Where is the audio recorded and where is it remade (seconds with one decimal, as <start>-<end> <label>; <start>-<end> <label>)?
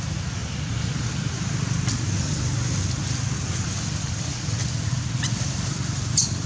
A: 0.0-0.4 remade; 0.4-1.0 recorded; 1.0-6.5 remade